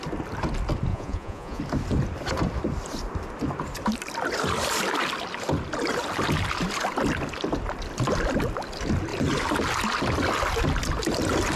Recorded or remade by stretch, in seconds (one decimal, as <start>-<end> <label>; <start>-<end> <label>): 0.0-0.9 recorded; 0.9-1.6 remade; 1.6-11.6 recorded